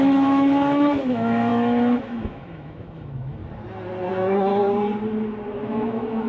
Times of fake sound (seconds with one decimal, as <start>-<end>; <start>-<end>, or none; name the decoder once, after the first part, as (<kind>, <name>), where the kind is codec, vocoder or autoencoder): 0.0-3.4 (autoencoder, DAC-VAE); 4.1-4.5; 5.6-6.3